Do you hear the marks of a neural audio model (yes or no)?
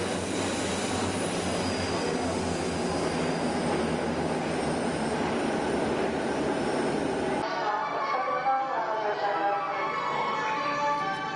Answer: no